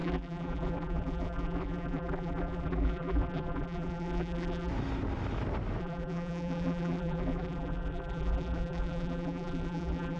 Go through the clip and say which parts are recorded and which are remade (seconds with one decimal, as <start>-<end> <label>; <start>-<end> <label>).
0.0-4.7 remade; 4.7-5.8 recorded; 5.8-10.2 remade